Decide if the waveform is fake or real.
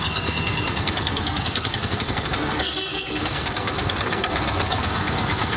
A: fake